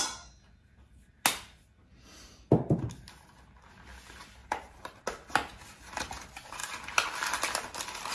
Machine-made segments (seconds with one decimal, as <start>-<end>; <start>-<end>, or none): 4.4-5.0